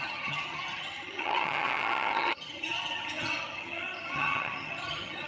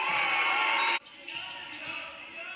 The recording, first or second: second